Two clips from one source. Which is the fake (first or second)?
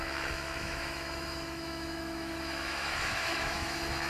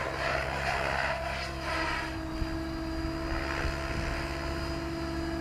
first